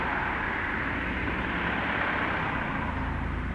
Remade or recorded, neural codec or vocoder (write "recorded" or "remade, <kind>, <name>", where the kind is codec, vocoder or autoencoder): recorded